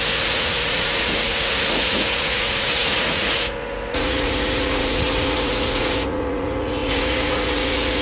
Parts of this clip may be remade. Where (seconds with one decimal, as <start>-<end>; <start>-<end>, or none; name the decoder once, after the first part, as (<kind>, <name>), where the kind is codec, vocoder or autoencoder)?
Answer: 0.0-8.0 (vocoder, Vocos)